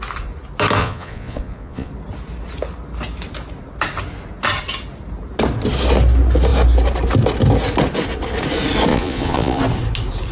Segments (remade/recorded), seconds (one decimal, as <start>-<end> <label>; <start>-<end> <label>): 0.0-0.8 recorded; 0.8-1.9 remade; 1.9-8.9 recorded; 8.9-9.6 remade; 9.6-10.3 recorded